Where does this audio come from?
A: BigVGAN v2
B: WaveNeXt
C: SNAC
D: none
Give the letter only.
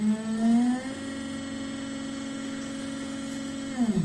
D